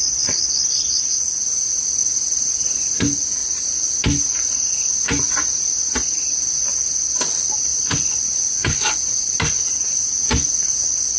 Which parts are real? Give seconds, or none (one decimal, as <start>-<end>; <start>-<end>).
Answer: 0.0-11.2